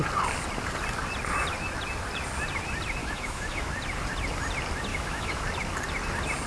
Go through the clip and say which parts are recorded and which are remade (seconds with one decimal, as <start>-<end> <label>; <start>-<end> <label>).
0.0-3.0 recorded; 3.0-3.7 remade; 3.7-4.9 recorded; 4.9-5.4 remade; 5.4-6.5 recorded